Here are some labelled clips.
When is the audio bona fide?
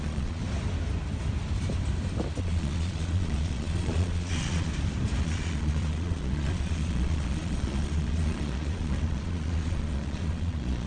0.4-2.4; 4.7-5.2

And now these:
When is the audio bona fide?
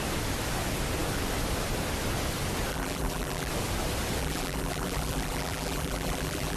0.0-2.7; 3.5-4.2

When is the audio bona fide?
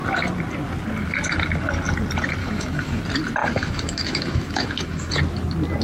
0.0-2.4; 3.0-3.4; 5.1-5.8